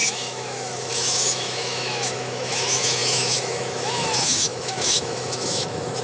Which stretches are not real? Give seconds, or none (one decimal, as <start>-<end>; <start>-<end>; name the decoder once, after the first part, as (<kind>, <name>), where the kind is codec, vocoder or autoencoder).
0.0-6.0 (autoencoder, DAC-VAE)